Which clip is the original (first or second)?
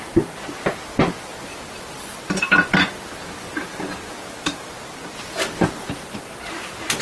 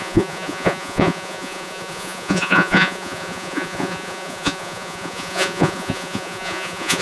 first